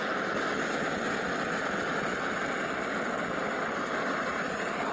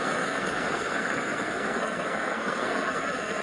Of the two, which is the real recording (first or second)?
first